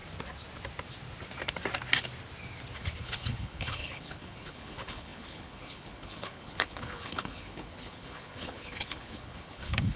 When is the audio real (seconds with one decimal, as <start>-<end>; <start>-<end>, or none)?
0.0-3.0